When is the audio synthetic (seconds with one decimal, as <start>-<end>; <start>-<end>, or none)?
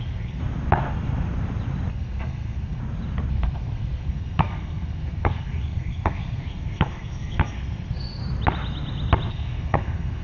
0.0-0.4; 1.9-2.8; 3.3-8.2; 9.3-10.2